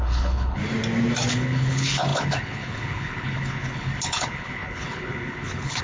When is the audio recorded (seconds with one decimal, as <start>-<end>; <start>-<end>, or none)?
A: 0.6-1.3